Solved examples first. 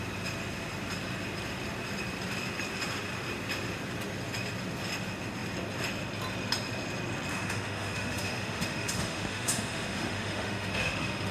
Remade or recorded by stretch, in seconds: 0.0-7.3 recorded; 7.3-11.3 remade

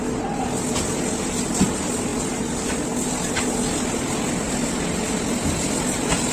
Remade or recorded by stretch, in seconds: 0.0-6.3 recorded

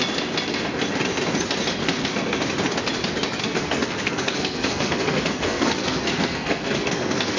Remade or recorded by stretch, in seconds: 0.0-1.8 recorded; 1.8-2.4 remade; 2.4-3.4 recorded; 3.4-7.4 remade

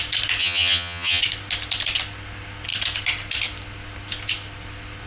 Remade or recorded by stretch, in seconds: 0.0-0.4 recorded; 0.4-1.2 remade; 1.2-5.1 recorded

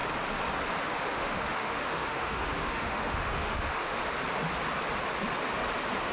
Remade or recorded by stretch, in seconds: 0.0-0.8 recorded; 0.8-4.0 remade; 4.0-6.1 recorded